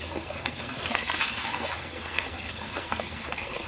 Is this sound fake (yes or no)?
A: yes